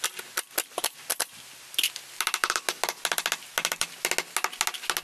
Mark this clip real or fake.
real